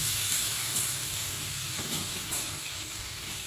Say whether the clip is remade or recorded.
remade